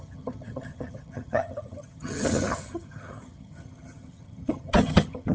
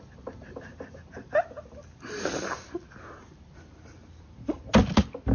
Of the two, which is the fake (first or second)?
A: first